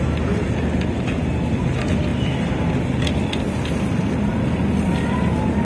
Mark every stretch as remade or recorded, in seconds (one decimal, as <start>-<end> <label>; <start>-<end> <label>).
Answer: 0.0-5.6 recorded